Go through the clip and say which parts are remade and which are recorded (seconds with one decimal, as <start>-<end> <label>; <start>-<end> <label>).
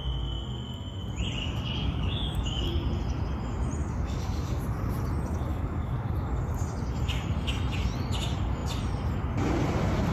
0.0-1.4 recorded; 1.4-2.7 remade; 2.7-3.8 recorded; 3.8-4.6 remade; 4.6-5.5 recorded; 5.5-6.1 remade; 6.1-10.1 recorded